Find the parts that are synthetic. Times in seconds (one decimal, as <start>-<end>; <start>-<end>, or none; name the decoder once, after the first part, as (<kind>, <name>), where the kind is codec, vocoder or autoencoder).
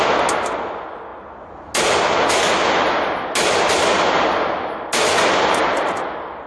none